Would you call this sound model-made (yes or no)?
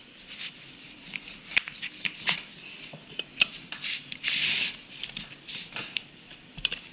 yes